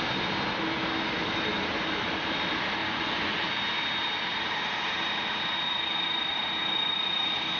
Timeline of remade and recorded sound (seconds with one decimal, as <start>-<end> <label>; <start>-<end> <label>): 0.0-2.8 recorded; 2.8-3.4 remade; 3.4-7.6 recorded

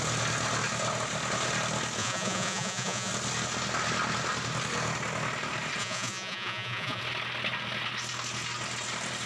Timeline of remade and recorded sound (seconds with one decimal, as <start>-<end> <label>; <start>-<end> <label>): 0.0-2.0 recorded; 2.0-3.1 remade; 3.1-5.8 recorded; 5.8-7.0 remade; 7.0-9.3 recorded

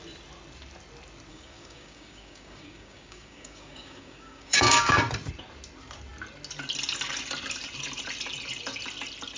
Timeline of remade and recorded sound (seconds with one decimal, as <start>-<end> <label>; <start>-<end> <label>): 0.0-1.3 recorded; 1.3-5.0 remade; 5.0-9.4 recorded